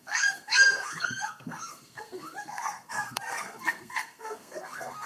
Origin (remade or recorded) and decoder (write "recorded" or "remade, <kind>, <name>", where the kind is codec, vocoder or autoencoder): remade, codec, SNAC